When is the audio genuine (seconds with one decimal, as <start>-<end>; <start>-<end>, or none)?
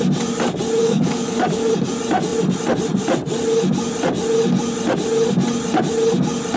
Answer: 0.0-0.8; 1.7-6.6